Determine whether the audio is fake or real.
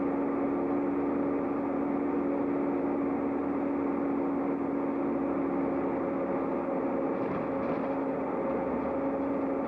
real